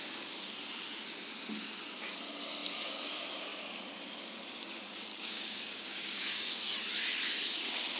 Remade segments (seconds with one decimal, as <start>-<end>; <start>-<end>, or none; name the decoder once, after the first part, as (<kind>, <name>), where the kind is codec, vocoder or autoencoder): 5.1-6.5 (codec, DAC)